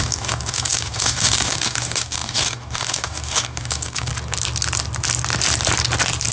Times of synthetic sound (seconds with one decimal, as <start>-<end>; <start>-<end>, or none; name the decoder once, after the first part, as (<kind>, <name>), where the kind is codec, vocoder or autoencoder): 0.0-4.1 (codec, DAC)